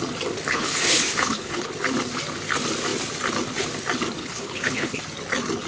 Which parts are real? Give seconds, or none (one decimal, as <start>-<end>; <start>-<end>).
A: 0.0-0.5; 1.7-4.2; 5.0-5.7